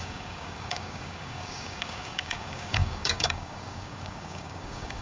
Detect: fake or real fake